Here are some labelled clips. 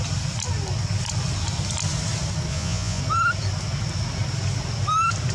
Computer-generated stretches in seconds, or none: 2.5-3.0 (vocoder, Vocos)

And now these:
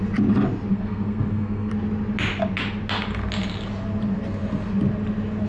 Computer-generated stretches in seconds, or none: 0.7-1.7 (codec, SNAC)

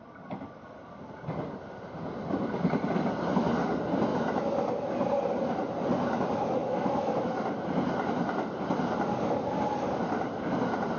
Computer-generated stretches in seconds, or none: 6.6-7.4 (autoencoder, DAC-VAE)

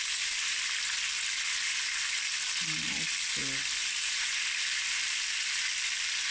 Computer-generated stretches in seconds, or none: none

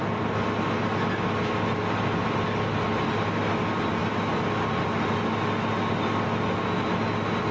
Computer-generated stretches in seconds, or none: none

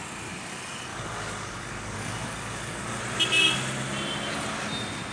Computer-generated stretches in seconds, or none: 0.9-3.0 (codec, DAC)